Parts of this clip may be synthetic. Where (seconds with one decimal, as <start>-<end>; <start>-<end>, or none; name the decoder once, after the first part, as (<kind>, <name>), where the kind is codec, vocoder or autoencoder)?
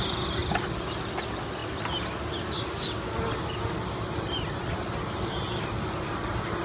none